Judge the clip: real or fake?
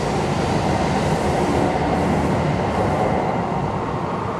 real